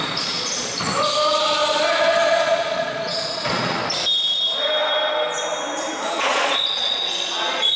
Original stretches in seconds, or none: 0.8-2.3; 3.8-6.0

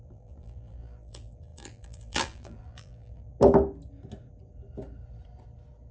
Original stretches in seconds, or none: 3.3-5.9

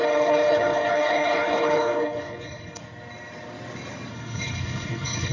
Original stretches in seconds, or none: 2.8-4.1

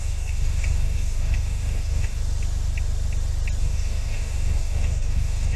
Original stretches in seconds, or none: 2.2-3.6

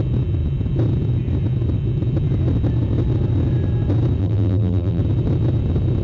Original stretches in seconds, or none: 0.0-4.2; 5.0-6.0

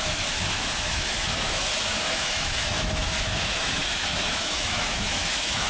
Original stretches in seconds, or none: none

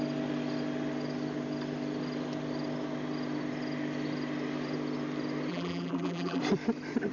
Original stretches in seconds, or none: 0.0-5.5; 6.4-7.1